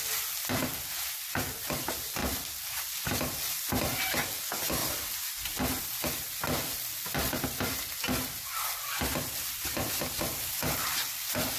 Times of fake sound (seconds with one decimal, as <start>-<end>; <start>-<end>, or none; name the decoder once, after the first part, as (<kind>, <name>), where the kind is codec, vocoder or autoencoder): none